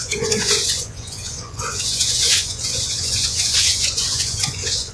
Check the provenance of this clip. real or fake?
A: fake